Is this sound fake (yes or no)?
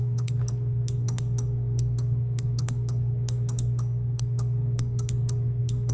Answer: yes